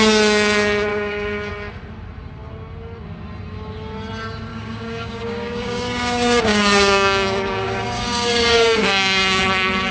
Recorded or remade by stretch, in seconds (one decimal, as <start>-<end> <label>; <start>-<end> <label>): 0.0-0.9 recorded; 0.9-1.5 remade; 1.5-4.5 recorded; 4.5-9.4 remade; 9.4-9.9 recorded